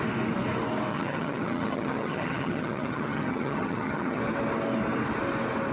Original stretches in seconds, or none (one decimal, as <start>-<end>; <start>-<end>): 0.0-0.9; 4.2-5.7